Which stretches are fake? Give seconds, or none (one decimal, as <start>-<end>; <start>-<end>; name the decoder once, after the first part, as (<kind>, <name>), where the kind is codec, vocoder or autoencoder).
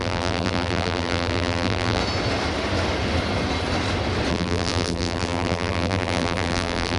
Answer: 0.0-2.0 (vocoder, BigVGAN v2); 4.3-7.0